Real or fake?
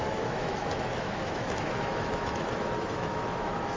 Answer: fake